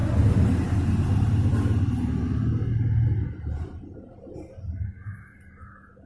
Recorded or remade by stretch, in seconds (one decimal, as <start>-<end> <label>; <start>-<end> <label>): 0.0-6.1 recorded